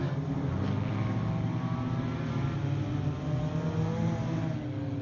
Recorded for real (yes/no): yes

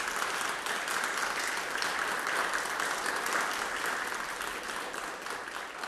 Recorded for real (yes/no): yes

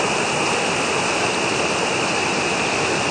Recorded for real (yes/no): yes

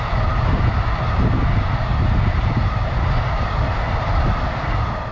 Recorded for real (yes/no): yes